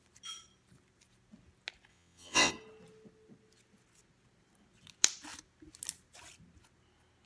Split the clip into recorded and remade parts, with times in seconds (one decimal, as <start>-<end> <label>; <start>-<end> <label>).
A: 0.0-1.9 recorded; 1.9-2.5 remade; 2.5-7.3 recorded